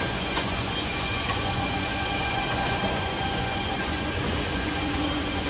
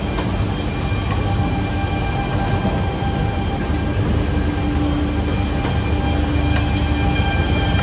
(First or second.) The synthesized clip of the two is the first